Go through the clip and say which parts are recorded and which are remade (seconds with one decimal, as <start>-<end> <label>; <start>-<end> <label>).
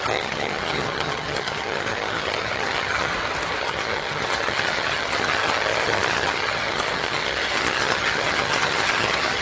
0.0-3.1 remade; 3.1-3.6 recorded; 3.6-9.4 remade